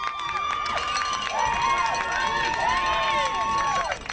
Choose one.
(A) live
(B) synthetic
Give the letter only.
A